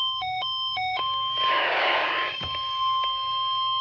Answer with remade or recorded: remade